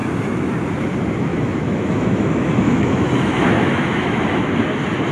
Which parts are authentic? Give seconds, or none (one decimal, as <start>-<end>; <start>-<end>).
0.5-1.3; 4.4-5.1